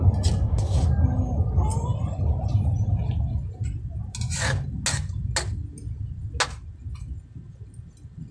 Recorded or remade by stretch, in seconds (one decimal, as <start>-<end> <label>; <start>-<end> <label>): 0.0-0.4 recorded; 0.4-0.9 remade; 0.9-8.3 recorded